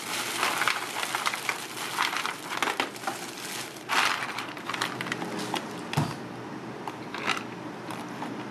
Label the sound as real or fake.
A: real